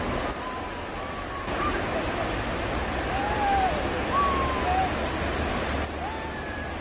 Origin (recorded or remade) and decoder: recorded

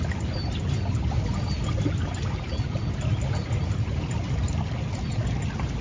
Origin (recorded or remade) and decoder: recorded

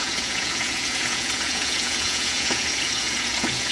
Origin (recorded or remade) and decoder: remade, vocoder, Vocos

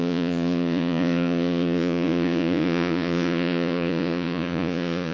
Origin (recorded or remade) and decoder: remade, vocoder, Vocos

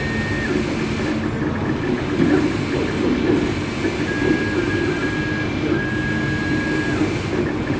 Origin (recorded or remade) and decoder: recorded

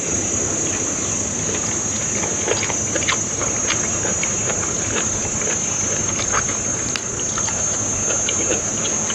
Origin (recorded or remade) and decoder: recorded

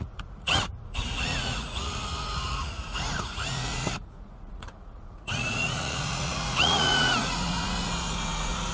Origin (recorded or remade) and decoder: remade, vocoder, Vocos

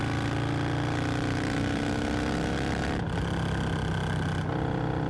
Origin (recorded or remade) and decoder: recorded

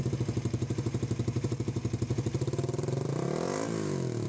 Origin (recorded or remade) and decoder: recorded